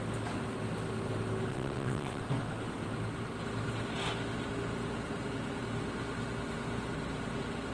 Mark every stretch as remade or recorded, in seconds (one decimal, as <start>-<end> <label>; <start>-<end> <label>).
0.0-1.5 recorded; 1.5-2.2 remade; 2.2-7.7 recorded